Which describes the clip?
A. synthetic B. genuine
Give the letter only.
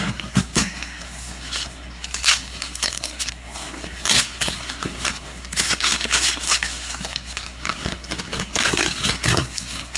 A